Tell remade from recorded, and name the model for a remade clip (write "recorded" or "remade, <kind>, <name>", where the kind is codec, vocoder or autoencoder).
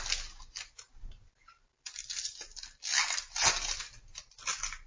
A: recorded